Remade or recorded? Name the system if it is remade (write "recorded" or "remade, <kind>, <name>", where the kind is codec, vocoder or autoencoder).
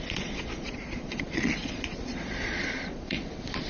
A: remade, vocoder, Vocos